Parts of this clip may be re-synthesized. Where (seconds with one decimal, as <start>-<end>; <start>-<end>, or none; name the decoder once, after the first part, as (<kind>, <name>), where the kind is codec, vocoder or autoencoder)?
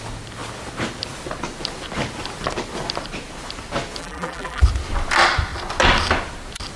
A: 4.0-4.6 (vocoder, BigVGAN v2)